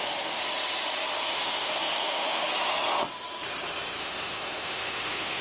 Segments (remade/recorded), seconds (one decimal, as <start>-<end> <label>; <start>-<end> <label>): 0.0-0.4 remade; 0.4-1.3 recorded; 1.3-2.5 remade; 2.5-4.0 recorded; 4.0-5.4 remade